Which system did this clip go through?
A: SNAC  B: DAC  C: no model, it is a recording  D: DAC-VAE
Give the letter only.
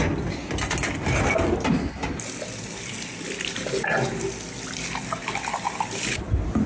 C